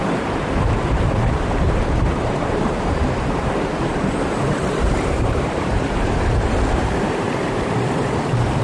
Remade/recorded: remade